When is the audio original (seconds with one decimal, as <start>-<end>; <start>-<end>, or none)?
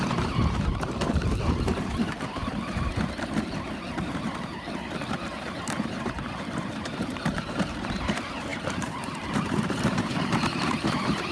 none